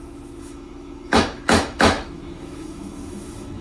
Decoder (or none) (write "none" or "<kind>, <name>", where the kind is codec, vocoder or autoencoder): autoencoder, DAC-VAE